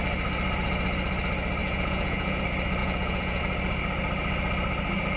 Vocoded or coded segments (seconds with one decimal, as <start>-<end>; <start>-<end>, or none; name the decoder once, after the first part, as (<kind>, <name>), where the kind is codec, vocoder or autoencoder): 1.6-2.4 (vocoder, Vocos); 2.8-3.4